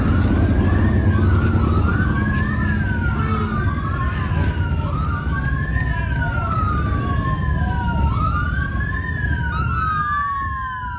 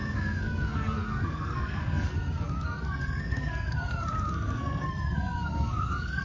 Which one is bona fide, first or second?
first